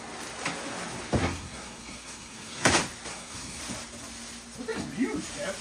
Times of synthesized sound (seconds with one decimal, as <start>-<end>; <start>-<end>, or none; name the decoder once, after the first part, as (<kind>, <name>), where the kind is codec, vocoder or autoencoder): 1.2-2.7 (codec, SNAC); 3.1-3.6